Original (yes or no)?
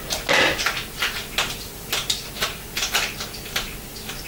yes